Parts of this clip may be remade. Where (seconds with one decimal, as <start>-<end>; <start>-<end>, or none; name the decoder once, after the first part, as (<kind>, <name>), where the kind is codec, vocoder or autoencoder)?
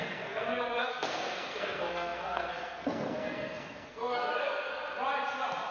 0.0-4.7 (codec, SNAC)